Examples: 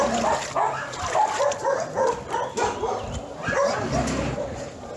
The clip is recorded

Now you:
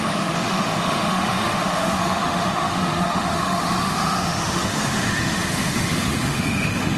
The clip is remade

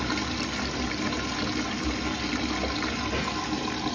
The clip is recorded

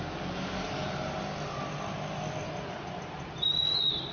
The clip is recorded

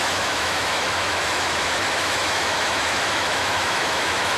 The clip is remade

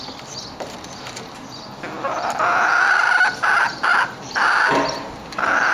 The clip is recorded